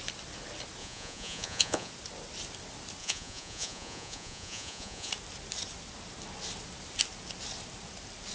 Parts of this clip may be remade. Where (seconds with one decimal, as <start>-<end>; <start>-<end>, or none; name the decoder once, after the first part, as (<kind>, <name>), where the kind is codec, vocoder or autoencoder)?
0.8-1.9 (vocoder, Vocos); 3.0-5.1